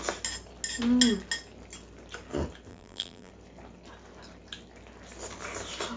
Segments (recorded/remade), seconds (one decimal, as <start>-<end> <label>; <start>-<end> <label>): 0.0-2.7 recorded; 2.7-3.3 remade; 3.3-6.0 recorded